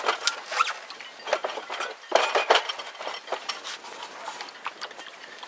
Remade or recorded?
recorded